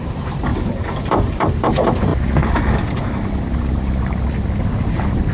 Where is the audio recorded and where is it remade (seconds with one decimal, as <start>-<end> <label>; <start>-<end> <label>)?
0.0-0.5 remade; 0.5-1.0 recorded; 1.0-2.1 remade; 2.1-4.6 recorded; 4.6-5.3 remade